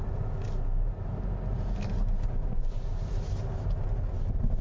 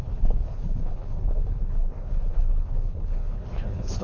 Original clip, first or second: first